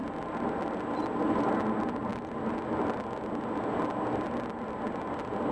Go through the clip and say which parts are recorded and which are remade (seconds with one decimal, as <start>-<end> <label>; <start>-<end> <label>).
0.0-5.5 recorded